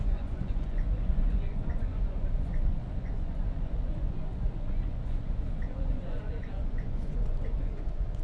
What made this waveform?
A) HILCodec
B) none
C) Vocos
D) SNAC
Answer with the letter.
C